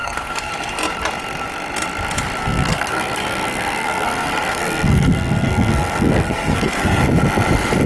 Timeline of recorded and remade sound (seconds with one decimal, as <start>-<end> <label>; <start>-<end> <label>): 0.0-0.5 remade; 0.5-2.4 recorded; 2.4-7.0 remade; 7.0-7.9 recorded